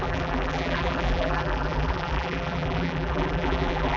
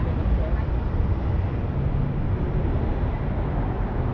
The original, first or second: second